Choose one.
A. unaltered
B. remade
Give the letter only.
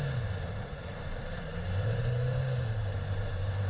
B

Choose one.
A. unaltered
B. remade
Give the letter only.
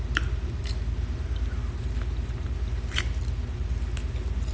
A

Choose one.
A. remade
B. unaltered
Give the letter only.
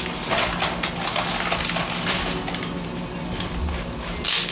B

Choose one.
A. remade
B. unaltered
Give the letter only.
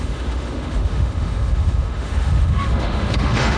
A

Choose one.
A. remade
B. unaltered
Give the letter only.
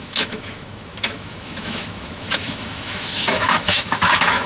A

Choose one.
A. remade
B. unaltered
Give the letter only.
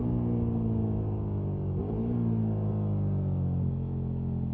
B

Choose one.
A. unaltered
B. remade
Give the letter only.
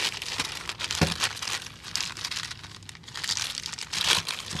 A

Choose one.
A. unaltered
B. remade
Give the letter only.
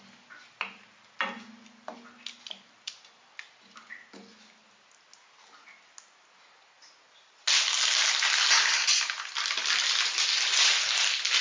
A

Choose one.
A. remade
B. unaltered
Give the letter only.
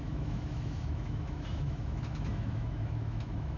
A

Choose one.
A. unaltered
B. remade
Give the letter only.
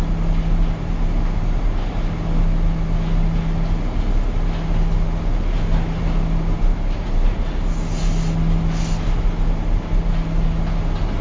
A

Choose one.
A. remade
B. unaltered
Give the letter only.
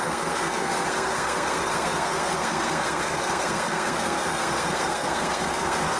A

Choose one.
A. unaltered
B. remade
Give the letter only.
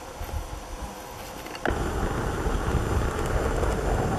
A